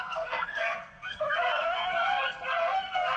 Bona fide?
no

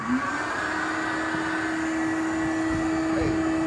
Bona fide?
yes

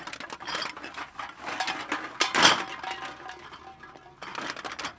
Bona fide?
yes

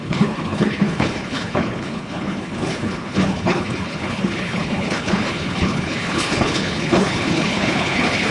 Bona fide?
no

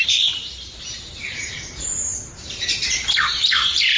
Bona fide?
no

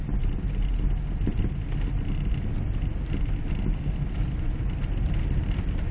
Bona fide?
yes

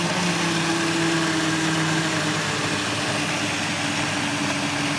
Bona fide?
yes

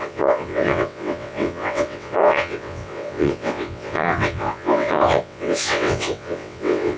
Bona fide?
no